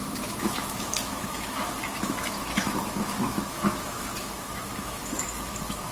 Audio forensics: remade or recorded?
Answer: remade